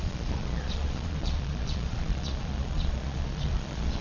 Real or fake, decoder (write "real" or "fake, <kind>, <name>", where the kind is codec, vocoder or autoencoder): fake, vocoder, Vocos